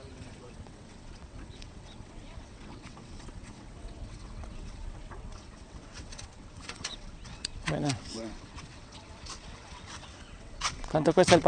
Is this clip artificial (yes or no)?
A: yes